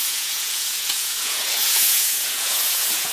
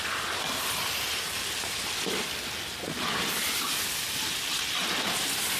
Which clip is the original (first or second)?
second